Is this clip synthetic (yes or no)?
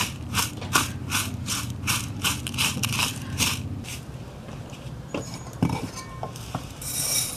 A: yes